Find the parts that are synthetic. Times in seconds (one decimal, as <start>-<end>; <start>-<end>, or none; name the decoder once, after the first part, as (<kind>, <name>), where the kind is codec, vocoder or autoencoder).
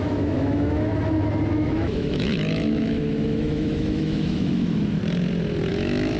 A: 0.0-0.9 (autoencoder, DAC-VAE); 1.5-5.0; 5.7-6.2